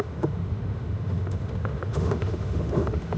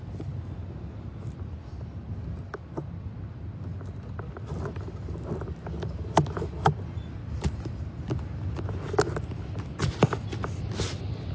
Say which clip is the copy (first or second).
first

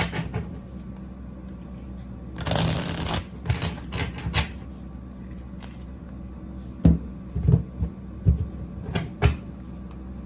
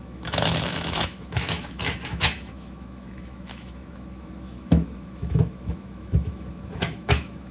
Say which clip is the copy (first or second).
second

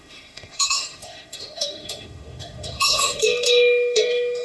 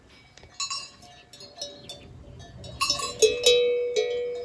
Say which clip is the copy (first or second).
first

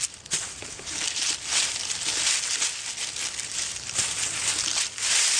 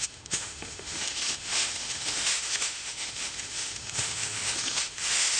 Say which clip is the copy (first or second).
second